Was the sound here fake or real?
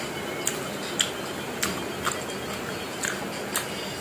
real